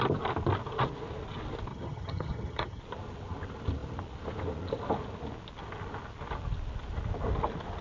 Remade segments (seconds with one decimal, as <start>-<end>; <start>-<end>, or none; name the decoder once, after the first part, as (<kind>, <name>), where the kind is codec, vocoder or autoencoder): 1.7-2.8 (vocoder, HiFi-GAN)